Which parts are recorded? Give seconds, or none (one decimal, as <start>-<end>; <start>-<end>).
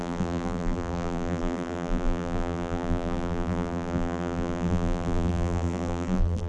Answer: none